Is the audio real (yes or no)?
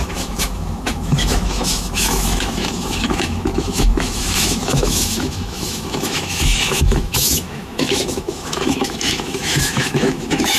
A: no